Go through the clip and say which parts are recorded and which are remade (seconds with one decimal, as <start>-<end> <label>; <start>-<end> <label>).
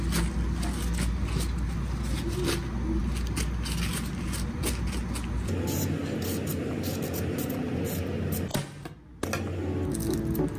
0.0-10.6 recorded